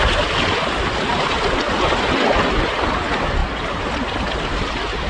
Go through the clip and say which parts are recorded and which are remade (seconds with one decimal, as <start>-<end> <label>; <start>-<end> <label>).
0.0-5.1 recorded